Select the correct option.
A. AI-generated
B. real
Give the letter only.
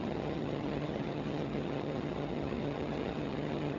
A